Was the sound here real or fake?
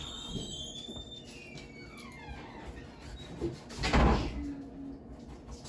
real